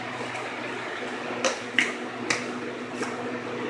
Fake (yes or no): no